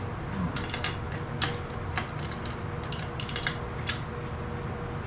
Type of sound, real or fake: real